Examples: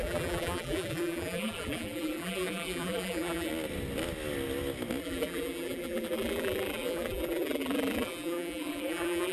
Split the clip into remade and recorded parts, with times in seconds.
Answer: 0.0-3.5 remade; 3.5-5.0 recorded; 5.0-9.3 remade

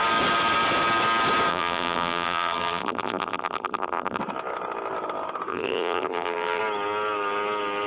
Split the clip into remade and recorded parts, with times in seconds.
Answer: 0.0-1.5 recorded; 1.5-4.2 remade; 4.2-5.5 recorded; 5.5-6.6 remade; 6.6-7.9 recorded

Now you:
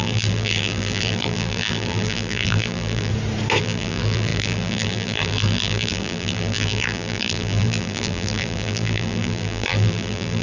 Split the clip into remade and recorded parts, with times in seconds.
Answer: 0.0-3.1 remade; 3.1-3.6 recorded; 3.6-10.4 remade

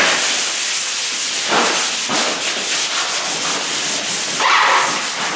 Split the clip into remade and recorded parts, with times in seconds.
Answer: 0.0-5.4 recorded